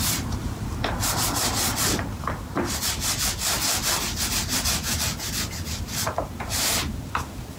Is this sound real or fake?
real